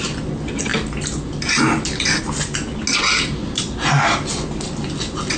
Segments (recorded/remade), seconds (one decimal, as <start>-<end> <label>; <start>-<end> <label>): 0.0-5.4 recorded